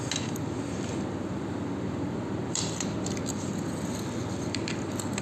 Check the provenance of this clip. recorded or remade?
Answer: recorded